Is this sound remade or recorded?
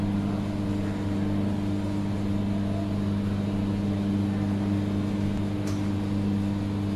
recorded